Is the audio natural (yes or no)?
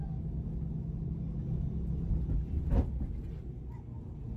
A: yes